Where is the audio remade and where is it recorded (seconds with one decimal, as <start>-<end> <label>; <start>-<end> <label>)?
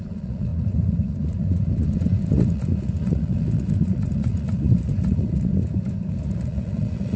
0.0-5.5 remade; 5.5-6.1 recorded; 6.1-7.2 remade